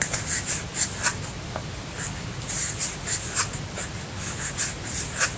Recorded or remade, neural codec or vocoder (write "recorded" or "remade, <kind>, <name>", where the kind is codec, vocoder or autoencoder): recorded